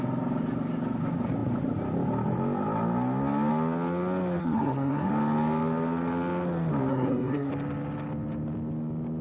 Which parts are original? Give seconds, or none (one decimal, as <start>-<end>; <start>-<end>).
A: 0.0-4.4; 5.1-6.9; 7.5-9.2

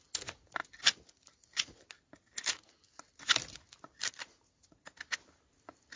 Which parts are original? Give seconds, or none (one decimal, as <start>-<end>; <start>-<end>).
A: 0.0-6.0

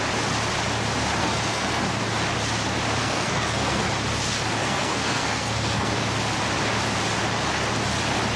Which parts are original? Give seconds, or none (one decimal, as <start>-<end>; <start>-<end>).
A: 0.0-1.2; 1.8-3.0; 3.9-4.6; 5.9-8.4

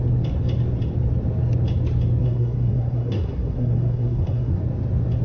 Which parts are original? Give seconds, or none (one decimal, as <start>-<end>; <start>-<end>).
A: 0.0-2.2; 4.6-5.2

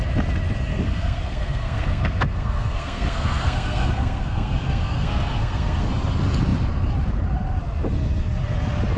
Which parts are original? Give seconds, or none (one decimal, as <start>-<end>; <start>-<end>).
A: 0.0-0.7; 5.9-9.0

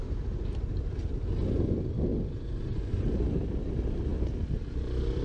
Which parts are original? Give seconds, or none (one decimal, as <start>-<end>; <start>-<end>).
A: 0.0-5.2

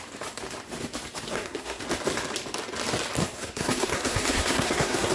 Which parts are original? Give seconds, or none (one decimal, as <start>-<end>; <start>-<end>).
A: 0.0-1.3; 1.8-3.2

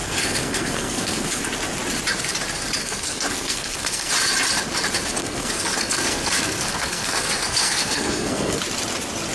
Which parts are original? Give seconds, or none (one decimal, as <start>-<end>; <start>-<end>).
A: 1.4-2.8; 4.1-5.2; 8.6-9.3